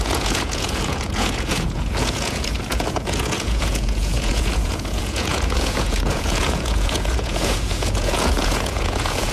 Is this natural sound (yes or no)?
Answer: no